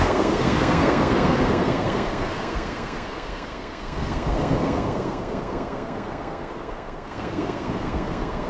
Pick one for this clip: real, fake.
fake